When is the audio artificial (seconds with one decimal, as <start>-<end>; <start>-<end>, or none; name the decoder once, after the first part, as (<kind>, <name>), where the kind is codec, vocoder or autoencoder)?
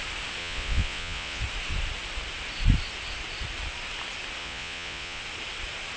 0.4-1.4 (vocoder, Vocos); 4.4-5.2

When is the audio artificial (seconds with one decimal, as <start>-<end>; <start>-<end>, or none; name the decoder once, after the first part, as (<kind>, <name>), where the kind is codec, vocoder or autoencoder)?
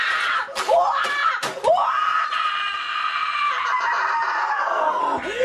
4.4-5.0 (codec, SNAC)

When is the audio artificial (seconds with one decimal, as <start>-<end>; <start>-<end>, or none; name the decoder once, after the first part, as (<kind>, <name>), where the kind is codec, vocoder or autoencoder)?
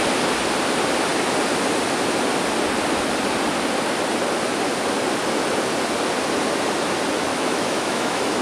7.3-8.4 (autoencoder, DAC-VAE)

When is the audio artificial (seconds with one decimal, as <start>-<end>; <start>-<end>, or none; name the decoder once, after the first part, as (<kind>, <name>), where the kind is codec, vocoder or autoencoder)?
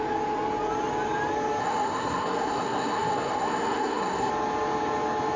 1.6-4.3 (codec, SNAC)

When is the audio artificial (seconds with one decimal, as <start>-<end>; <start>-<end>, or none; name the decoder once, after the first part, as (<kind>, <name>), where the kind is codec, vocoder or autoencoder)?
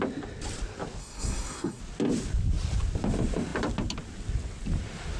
1.0-1.8 (codec, SNAC)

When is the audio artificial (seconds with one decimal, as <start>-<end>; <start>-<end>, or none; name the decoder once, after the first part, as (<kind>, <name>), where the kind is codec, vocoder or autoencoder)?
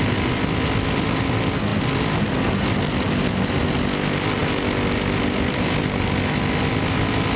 none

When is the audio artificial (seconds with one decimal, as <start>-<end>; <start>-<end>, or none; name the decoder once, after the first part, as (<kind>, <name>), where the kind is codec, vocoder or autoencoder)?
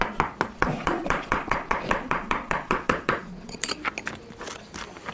0.6-3.7 (vocoder, Vocos)